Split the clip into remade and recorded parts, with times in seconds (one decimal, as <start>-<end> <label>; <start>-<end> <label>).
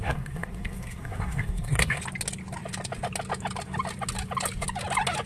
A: 0.0-2.0 remade; 2.0-5.3 recorded